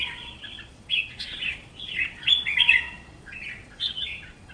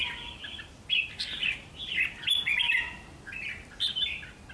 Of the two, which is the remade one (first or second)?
first